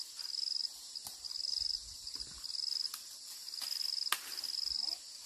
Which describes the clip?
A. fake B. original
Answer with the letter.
B